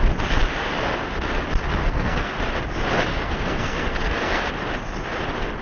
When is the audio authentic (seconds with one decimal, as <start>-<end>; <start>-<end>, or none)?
0.0-1.8; 2.3-3.1; 4.5-5.6